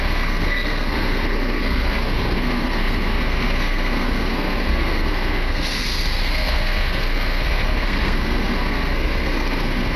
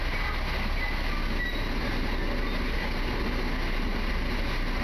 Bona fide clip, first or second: second